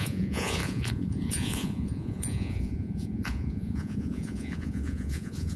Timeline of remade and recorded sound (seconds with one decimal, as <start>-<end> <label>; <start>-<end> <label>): 0.0-5.6 remade